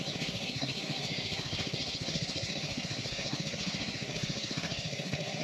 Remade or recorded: remade